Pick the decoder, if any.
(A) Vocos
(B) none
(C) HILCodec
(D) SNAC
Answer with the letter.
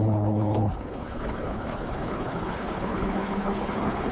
C